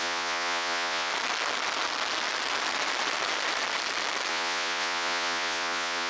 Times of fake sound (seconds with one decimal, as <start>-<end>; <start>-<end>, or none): 0.0-1.1; 4.3-6.1